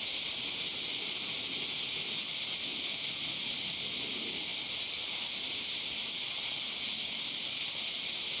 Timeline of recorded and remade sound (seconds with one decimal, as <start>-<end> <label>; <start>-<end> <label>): 0.0-8.4 recorded